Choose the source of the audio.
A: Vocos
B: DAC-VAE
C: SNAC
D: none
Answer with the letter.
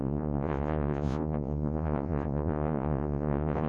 A